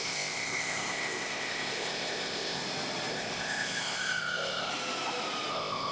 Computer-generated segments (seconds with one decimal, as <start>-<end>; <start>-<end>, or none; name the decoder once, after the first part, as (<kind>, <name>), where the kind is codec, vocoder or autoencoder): 0.0-2.6 (codec, ZipCodec); 3.1-4.7; 5.5-5.9